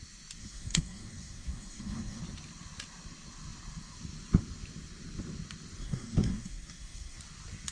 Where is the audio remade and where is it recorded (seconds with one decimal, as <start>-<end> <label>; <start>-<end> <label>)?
0.0-0.4 recorded; 0.4-2.2 remade; 2.2-5.8 recorded; 5.8-7.2 remade; 7.2-7.7 recorded